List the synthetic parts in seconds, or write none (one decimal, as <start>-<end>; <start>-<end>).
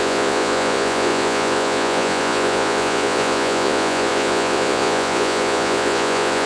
0.0-6.5